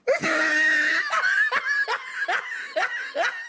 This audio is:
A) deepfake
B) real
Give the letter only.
B